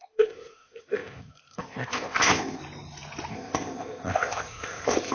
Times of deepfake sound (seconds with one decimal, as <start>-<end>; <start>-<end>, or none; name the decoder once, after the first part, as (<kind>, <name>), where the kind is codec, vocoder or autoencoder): 0.0-2.6 (codec, ZipCodec); 3.3-5.1